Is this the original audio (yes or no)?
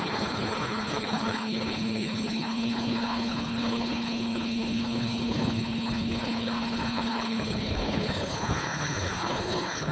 no